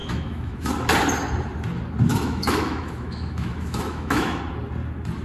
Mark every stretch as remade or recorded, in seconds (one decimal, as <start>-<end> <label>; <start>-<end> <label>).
0.0-0.7 remade; 0.7-2.1 recorded; 2.1-4.4 remade; 4.4-5.2 recorded